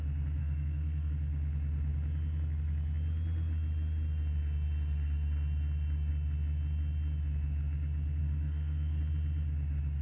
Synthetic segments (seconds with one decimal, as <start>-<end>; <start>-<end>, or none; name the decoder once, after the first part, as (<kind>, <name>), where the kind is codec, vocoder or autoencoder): 0.4-1.1 (codec, SNAC); 8.2-9.0